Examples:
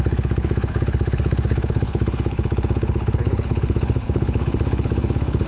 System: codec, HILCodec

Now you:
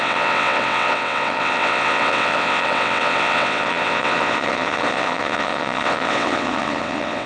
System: vocoder, WaveNeXt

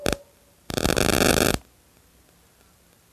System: none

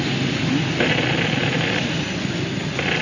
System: none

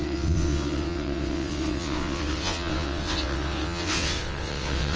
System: vocoder, WaveNeXt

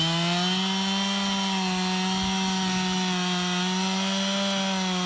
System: none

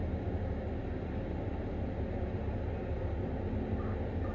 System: none